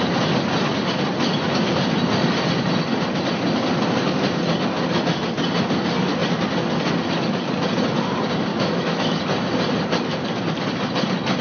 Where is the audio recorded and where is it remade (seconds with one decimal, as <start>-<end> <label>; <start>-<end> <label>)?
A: 0.0-8.5 recorded; 8.5-9.2 remade; 9.2-11.4 recorded